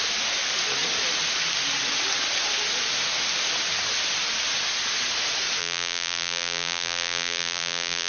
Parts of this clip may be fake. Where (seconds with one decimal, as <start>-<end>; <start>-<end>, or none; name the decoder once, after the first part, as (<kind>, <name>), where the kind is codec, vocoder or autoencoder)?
5.6-8.1 (vocoder, BigVGAN v2)